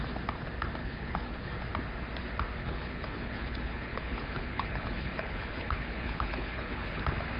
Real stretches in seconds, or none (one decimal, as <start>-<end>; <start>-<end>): 0.0-0.8; 1.5-2.6; 7.0-7.4